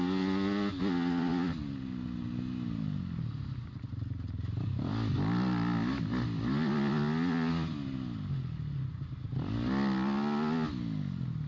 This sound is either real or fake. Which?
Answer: real